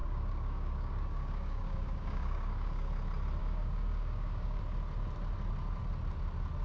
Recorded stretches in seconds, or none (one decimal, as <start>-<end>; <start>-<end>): 2.9-3.4; 4.6-6.6